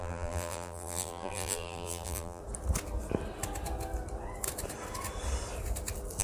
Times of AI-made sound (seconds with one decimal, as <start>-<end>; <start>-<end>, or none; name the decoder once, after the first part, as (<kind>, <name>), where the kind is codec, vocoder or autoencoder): 0.0-2.4 (vocoder, BigVGAN v2)